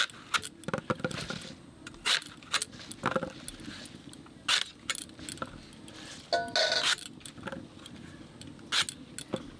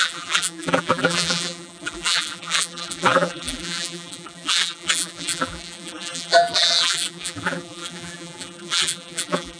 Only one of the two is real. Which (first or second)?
first